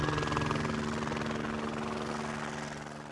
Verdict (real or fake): real